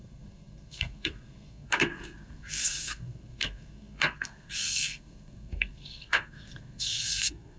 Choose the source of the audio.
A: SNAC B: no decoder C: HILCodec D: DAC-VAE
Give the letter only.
A